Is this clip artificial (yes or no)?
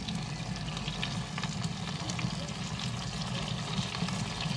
no